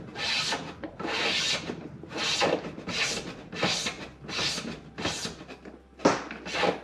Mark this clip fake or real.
real